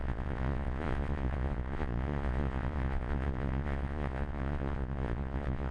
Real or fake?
fake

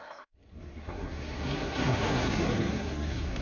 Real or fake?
fake